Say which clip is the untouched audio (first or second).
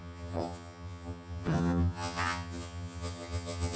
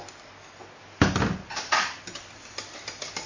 second